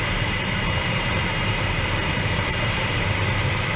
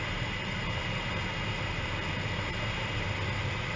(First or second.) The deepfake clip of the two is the first